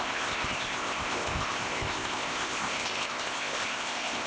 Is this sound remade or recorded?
remade